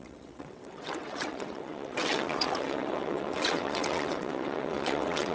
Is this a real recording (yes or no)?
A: no